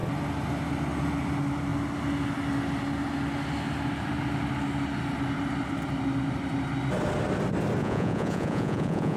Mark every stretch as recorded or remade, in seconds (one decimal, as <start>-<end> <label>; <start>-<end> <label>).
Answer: 0.0-7.8 recorded; 7.8-9.2 remade

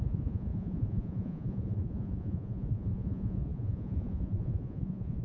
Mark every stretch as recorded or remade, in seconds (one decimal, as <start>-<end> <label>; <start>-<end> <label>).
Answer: 0.0-5.2 remade

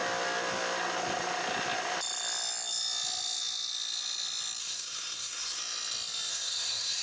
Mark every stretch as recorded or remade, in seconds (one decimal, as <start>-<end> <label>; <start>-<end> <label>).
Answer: 0.0-4.6 recorded; 4.6-5.6 remade; 5.6-6.3 recorded; 6.3-7.0 remade

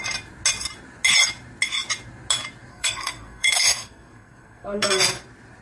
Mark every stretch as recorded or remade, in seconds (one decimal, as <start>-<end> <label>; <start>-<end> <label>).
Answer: 0.0-2.7 recorded; 2.7-5.0 remade; 5.0-5.6 recorded

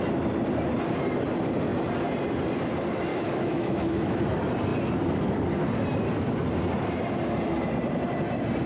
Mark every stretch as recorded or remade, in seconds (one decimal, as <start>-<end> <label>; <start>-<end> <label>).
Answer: 0.0-3.1 recorded; 3.1-4.2 remade; 4.2-8.7 recorded